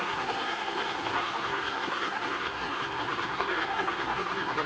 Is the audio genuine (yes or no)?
no